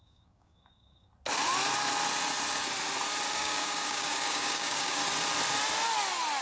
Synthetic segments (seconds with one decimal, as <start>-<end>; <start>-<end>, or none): 0.0-1.1; 3.3-5.0